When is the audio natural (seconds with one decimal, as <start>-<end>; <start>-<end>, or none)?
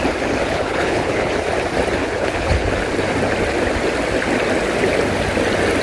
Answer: 0.0-0.4; 1.3-2.0; 2.7-5.8